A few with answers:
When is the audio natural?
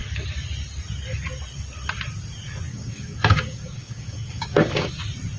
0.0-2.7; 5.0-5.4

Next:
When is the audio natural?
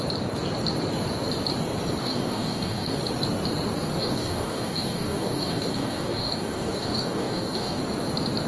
0.0-2.0; 3.0-4.0; 7.8-8.5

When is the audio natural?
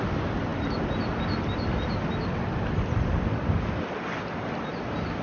0.0-5.2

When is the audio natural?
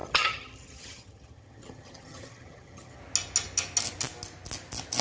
3.0-5.0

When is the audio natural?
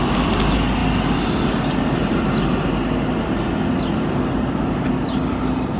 0.0-5.8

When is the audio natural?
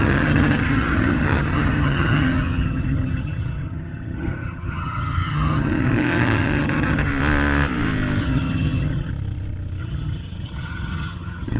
7.1-8.2; 9.1-9.8